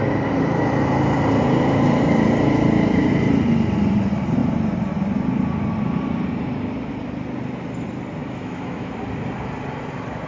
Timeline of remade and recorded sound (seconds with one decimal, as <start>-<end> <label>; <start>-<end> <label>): 0.0-8.2 recorded; 8.2-8.9 remade; 8.9-10.3 recorded